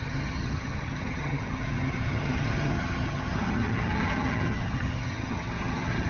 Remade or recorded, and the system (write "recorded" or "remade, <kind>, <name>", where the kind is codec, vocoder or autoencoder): remade, vocoder, HiFi-GAN